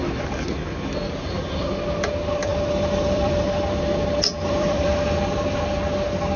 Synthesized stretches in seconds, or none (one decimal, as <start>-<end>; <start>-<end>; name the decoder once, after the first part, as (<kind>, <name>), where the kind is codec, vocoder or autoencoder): 2.5-3.7 (vocoder, BigVGAN v2); 4.3-5.2